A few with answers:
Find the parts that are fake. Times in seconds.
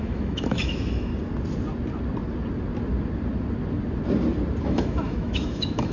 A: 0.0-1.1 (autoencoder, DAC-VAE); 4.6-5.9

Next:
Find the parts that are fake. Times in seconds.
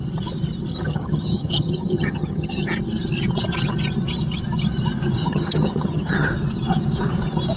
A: 0.7-2.7 (vocoder, HiFi-GAN); 5.2-6.3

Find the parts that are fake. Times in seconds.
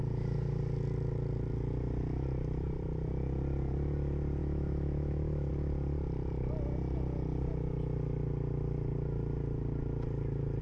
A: 4.4-5.5 (autoencoder, DAC-VAE)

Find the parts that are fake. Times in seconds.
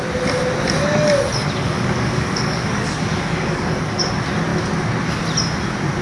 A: 1.6-4.1 (codec, DAC)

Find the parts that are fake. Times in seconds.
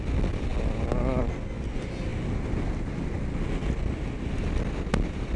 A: none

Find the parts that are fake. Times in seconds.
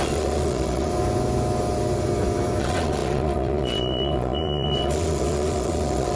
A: 0.0-0.9 (vocoder, Vocos); 2.6-6.2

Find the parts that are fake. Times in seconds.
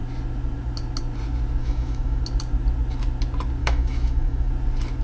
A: 1.6-2.2 (autoencoder, DAC-VAE); 3.6-4.5